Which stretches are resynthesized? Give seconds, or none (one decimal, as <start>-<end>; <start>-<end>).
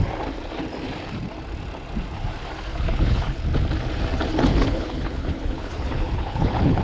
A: 2.7-3.4; 4.5-6.8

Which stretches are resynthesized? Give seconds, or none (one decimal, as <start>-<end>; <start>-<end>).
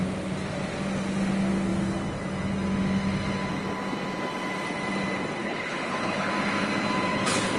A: 5.4-6.3; 7.1-7.6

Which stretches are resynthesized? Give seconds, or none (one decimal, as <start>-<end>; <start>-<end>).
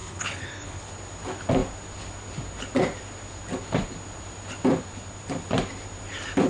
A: 0.0-0.9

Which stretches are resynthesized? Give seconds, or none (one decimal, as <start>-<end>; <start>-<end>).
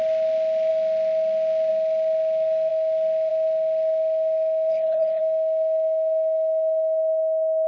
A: 4.7-5.2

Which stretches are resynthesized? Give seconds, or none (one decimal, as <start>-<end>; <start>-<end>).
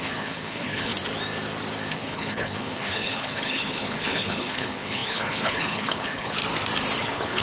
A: 0.0-0.9; 1.9-6.4; 7.0-7.4